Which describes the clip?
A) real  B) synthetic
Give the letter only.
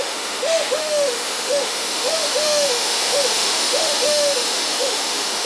B